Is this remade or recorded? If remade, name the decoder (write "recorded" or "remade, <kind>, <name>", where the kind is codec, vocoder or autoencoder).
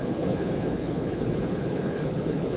remade, codec, HILCodec